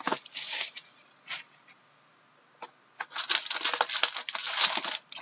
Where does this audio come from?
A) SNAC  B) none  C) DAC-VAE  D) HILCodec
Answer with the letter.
B